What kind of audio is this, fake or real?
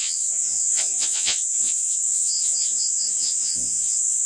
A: fake